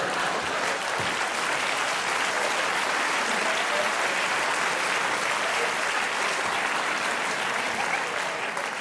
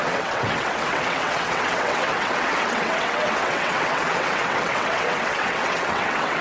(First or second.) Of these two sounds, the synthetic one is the second